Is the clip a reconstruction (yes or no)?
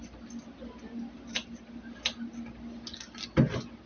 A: no